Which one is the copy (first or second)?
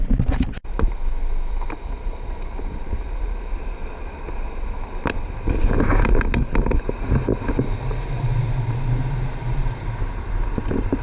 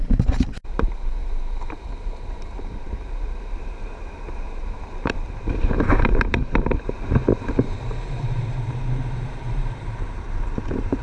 second